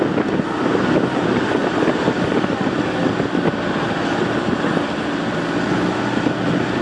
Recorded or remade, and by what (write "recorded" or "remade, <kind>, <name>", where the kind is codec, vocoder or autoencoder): recorded